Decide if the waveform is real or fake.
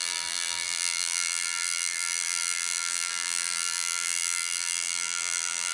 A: fake